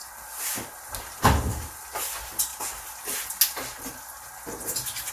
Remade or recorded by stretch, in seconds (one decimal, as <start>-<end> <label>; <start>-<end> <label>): 0.0-5.1 recorded